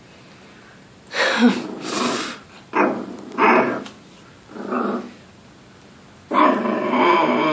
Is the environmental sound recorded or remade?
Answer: recorded